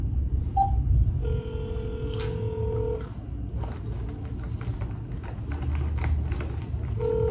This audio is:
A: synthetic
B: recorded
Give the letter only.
B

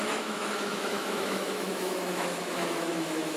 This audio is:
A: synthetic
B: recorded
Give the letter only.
A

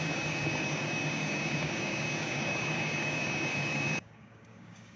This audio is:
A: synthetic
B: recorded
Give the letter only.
A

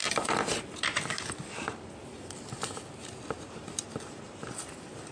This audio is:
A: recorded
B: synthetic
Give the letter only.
A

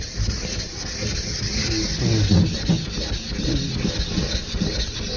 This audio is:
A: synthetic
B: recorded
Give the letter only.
B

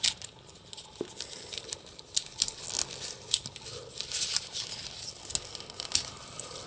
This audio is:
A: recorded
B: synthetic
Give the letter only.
A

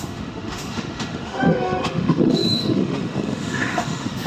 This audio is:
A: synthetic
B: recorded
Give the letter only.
A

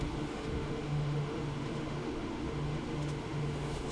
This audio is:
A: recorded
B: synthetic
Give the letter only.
B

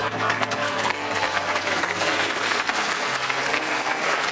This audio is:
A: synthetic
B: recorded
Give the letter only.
A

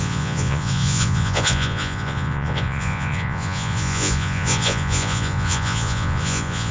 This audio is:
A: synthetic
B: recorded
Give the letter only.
A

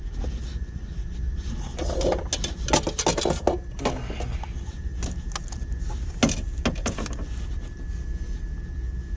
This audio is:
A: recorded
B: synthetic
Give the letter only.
A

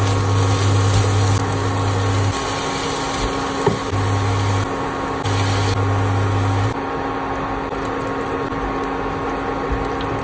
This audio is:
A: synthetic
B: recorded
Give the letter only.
B